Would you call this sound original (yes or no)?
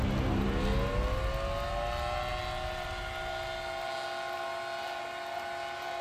yes